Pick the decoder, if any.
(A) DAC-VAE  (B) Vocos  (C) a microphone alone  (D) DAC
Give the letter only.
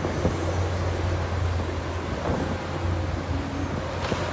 C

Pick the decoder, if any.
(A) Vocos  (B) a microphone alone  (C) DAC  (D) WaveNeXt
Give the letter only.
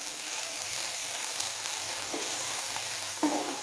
C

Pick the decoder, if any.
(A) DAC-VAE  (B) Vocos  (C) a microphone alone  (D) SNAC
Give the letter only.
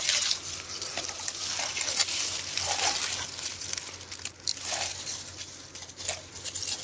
C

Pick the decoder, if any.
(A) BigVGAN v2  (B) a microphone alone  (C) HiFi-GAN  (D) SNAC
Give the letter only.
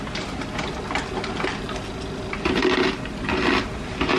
B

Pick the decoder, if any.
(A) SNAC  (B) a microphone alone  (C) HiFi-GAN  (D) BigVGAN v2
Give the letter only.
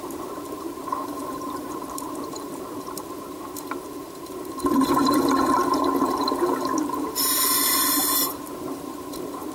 D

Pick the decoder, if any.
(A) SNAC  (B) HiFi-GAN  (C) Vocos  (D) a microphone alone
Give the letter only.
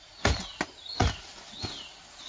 D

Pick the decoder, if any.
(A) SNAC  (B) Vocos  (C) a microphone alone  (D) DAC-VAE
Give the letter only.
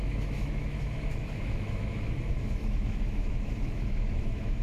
D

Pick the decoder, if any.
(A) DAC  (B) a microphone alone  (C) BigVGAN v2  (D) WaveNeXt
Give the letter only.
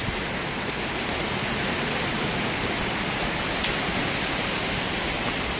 B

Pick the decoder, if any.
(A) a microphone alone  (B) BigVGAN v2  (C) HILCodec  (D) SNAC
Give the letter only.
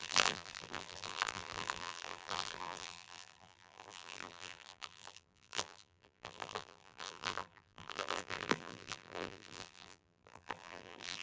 B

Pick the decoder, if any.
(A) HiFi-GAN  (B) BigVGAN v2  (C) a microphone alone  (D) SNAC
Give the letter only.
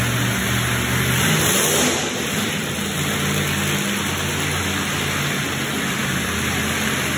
C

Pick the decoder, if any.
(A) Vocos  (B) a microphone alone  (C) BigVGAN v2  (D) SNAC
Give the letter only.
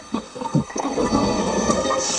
D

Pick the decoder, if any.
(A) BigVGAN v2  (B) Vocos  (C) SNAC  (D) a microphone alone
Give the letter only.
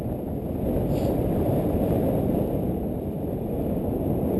A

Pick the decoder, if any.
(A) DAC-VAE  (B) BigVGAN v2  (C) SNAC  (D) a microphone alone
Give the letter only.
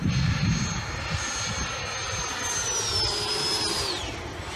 D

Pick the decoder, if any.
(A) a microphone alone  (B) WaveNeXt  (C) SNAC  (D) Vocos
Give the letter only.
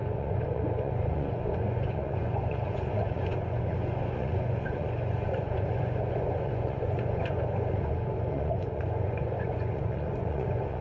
D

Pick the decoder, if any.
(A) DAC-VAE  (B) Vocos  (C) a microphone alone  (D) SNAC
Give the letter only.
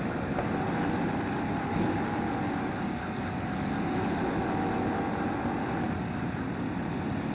C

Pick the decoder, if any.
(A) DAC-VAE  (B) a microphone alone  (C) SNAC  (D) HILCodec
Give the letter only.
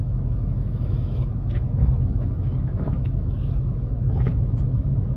A